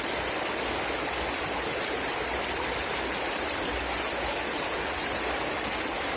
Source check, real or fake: real